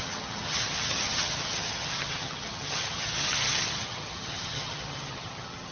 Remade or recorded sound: remade